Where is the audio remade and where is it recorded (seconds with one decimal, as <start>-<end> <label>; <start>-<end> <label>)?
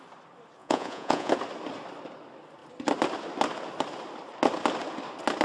0.0-0.6 recorded; 0.6-1.3 remade; 1.3-5.4 recorded